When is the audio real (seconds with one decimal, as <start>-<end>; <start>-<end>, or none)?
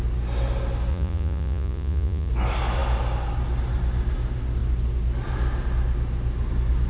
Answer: 0.0-0.9; 2.3-6.9